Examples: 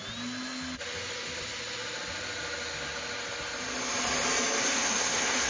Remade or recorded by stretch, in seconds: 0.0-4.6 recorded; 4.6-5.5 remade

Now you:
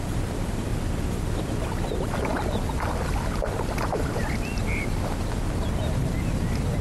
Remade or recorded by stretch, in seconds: 0.0-0.7 remade; 0.7-1.3 recorded; 1.3-6.8 remade

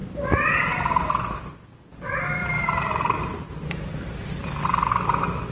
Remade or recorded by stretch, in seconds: 0.0-0.9 remade; 0.9-1.9 recorded; 1.9-4.5 remade; 4.5-5.5 recorded

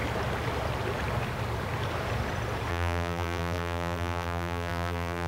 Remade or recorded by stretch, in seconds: 0.0-2.7 recorded; 2.7-5.3 remade